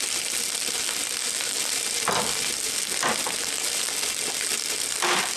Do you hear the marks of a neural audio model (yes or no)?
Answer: no